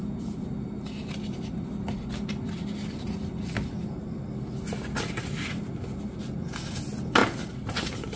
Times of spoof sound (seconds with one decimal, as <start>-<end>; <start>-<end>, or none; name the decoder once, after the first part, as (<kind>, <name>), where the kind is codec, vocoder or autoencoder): none